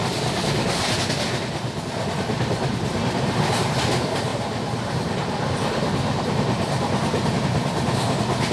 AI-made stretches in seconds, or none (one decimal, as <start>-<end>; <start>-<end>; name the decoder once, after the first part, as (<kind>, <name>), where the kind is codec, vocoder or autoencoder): 1.8-8.5 (vocoder, BigVGAN v2)